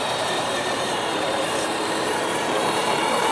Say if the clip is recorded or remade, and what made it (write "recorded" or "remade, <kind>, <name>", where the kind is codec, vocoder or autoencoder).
remade, vocoder, BigVGAN v2